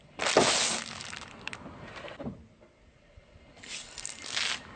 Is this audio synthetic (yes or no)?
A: no